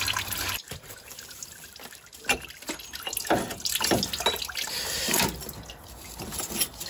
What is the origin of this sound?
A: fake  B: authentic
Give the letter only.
B